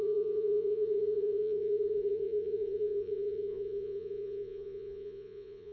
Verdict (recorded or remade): remade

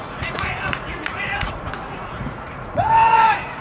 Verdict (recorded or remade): remade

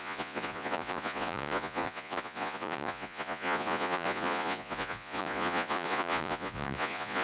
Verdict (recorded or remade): remade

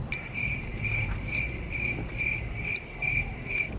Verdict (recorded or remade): recorded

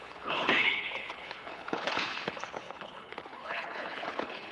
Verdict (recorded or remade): remade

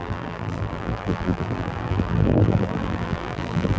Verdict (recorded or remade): remade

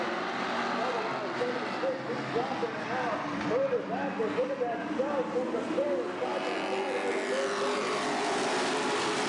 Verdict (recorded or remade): recorded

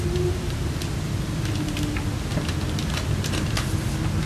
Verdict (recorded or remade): recorded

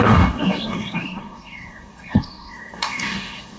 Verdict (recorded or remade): remade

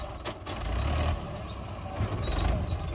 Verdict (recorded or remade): recorded